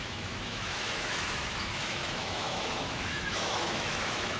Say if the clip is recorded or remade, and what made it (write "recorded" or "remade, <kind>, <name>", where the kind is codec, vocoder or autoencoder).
remade, autoencoder, DAC-VAE